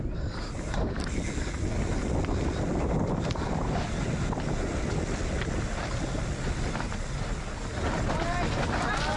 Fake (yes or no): no